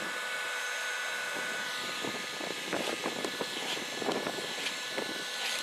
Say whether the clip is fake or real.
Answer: real